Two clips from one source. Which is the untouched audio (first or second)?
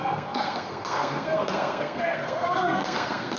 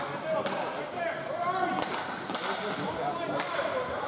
second